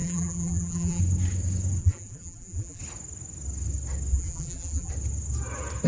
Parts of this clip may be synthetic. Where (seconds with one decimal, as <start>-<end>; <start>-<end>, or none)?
0.0-1.0; 1.8-2.8; 4.1-4.9